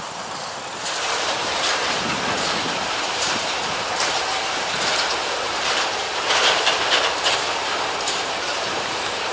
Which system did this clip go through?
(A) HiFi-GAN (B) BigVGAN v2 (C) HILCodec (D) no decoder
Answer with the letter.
B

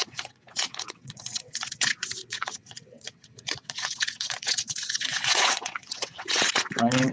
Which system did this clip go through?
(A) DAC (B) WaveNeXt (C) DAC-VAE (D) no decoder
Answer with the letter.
B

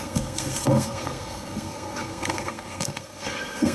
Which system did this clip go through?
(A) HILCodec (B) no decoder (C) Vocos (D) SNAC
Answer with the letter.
D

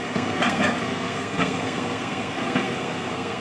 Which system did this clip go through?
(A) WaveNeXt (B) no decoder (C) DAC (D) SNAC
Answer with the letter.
D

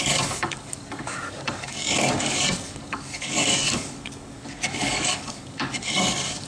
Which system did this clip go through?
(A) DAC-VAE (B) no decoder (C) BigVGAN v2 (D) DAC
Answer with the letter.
D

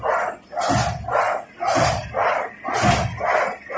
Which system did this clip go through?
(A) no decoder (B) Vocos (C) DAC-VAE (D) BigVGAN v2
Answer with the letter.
A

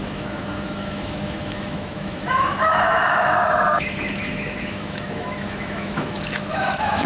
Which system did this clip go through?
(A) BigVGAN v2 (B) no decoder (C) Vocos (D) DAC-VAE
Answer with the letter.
D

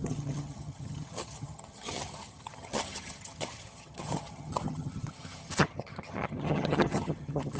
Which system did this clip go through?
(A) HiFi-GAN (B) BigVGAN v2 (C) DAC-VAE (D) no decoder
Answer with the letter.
A